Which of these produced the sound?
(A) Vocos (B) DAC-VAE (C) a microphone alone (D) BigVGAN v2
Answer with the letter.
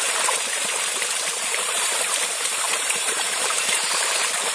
D